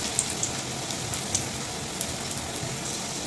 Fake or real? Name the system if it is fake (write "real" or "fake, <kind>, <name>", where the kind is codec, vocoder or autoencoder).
real